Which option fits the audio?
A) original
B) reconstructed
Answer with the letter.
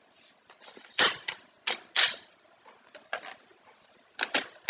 A